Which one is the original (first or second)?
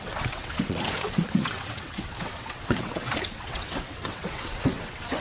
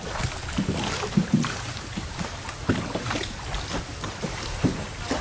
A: second